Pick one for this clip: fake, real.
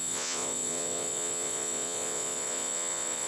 fake